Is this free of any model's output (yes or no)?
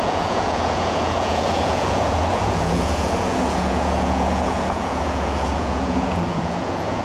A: no